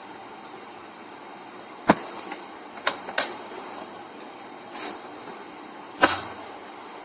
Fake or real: real